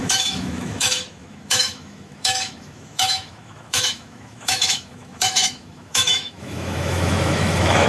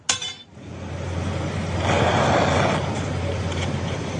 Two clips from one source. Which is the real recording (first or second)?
second